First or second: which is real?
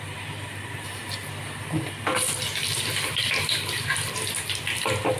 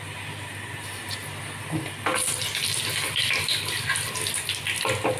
second